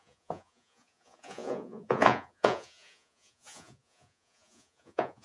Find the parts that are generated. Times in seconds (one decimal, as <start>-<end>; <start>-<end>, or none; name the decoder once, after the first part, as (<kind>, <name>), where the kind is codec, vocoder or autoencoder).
0.0-5.2 (vocoder, Vocos)